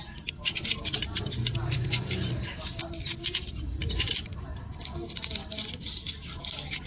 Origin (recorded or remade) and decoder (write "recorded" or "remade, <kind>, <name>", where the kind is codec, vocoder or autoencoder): recorded